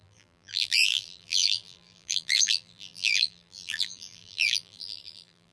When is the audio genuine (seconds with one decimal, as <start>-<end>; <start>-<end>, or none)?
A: none